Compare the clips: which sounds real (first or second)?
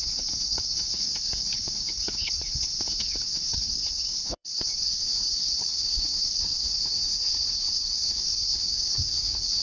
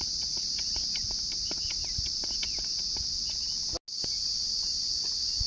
second